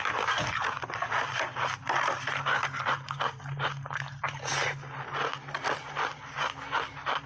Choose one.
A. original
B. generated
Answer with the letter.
A